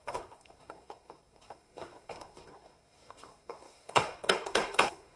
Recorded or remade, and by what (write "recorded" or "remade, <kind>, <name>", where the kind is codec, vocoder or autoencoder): remade, codec, SNAC